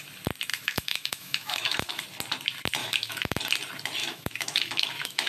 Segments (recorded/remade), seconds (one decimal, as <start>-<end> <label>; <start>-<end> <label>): 0.0-0.5 recorded; 0.5-2.0 remade; 2.0-2.8 recorded; 2.8-3.4 remade; 3.4-4.0 recorded; 4.0-5.3 remade